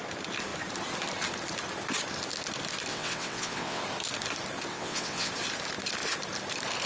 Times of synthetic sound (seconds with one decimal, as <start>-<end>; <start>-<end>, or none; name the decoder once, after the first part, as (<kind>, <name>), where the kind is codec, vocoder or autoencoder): 2.9-3.8 (vocoder, WaveNeXt); 4.7-5.3